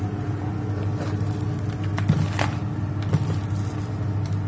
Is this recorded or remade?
recorded